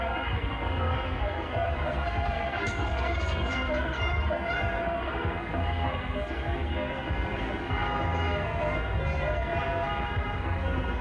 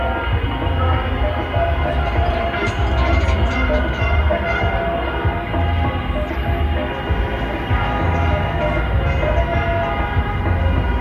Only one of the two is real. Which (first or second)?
second